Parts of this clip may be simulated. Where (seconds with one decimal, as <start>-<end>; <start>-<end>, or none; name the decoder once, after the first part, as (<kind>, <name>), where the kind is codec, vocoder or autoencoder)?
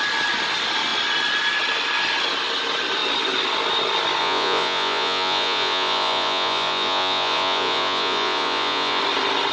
4.2-9.0 (vocoder, Vocos)